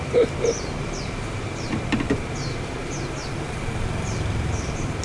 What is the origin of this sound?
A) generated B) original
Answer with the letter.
A